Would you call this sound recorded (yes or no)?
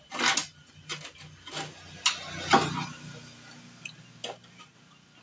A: yes